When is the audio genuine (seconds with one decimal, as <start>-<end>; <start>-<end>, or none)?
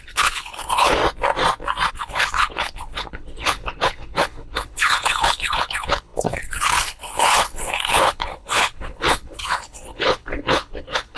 1.0-1.9